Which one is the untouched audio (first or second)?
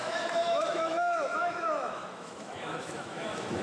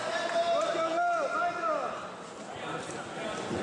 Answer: second